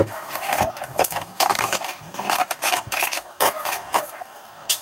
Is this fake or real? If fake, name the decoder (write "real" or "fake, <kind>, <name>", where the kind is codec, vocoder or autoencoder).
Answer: fake, codec, DAC